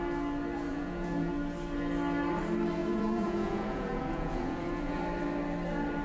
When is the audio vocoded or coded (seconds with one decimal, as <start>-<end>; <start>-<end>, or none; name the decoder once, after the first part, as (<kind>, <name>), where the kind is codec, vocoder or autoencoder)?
0.7-1.3 (vocoder, Vocos); 2.8-5.0